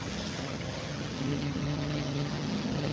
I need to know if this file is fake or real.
fake